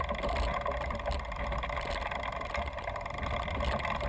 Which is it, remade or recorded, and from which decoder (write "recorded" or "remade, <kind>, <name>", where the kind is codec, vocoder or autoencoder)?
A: recorded